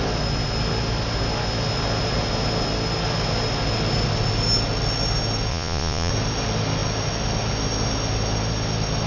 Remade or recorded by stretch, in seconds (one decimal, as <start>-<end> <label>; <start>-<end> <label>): 0.0-5.5 recorded; 5.5-6.1 remade; 6.1-9.1 recorded